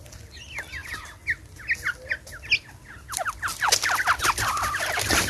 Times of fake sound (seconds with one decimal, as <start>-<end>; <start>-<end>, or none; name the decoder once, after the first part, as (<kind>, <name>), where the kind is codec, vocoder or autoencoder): none